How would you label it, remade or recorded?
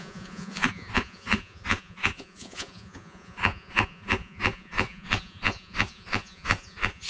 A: remade